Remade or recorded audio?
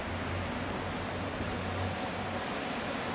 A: recorded